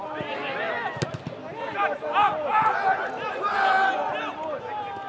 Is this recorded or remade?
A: recorded